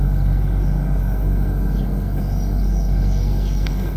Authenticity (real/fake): fake